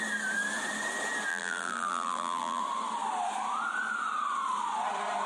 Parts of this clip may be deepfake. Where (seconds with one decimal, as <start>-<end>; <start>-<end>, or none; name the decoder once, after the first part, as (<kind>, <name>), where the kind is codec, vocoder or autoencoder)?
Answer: 1.3-2.6 (vocoder, BigVGAN v2)